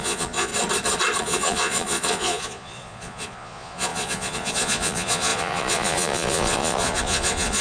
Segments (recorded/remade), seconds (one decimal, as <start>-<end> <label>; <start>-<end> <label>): 0.0-0.5 remade; 0.5-1.2 recorded; 1.2-7.6 remade